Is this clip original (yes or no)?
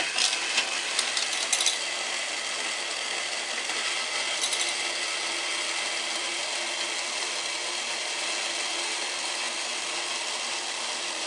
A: yes